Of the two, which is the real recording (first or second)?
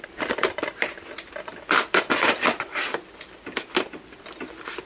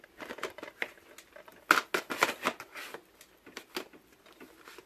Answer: second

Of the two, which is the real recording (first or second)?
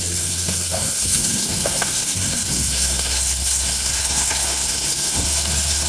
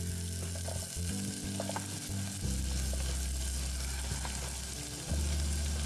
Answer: second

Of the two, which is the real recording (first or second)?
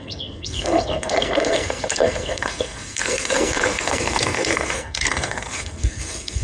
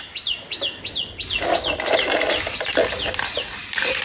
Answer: second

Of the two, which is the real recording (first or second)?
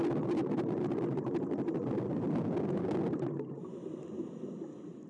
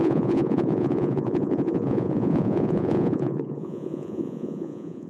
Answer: first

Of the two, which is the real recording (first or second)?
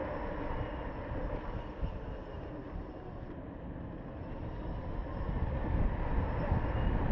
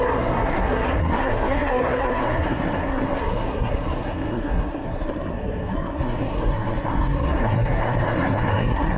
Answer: first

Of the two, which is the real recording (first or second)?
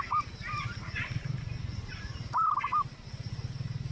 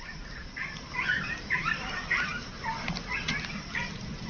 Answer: first